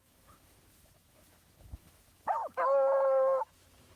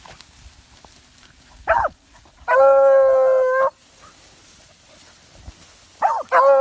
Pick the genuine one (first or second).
second